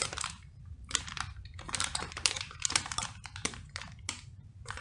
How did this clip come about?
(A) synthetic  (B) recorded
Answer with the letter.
A